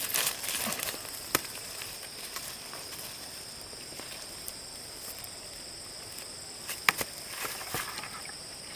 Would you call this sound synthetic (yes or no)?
yes